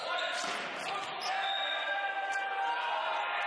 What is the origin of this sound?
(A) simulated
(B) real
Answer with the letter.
B